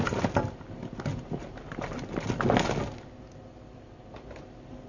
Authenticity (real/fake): real